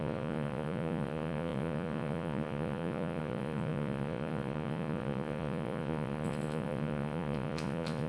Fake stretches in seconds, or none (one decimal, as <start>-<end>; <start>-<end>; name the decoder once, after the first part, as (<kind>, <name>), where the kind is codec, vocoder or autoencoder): 0.0-8.1 (vocoder, Vocos)

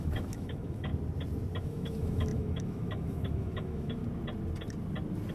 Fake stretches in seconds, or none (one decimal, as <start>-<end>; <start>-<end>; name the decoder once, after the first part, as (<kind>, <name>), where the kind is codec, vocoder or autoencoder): 0.0-0.9 (autoencoder, DAC-VAE); 1.6-4.0